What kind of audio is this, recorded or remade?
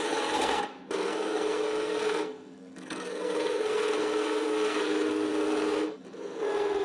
remade